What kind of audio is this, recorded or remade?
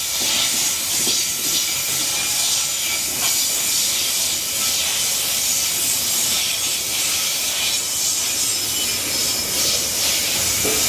recorded